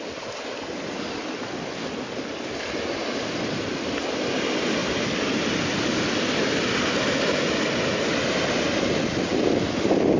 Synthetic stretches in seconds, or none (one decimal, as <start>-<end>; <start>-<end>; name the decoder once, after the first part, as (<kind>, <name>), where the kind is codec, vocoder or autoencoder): none